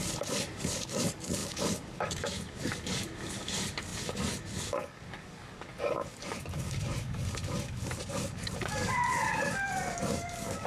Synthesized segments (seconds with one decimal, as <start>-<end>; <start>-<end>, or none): 0.0-10.7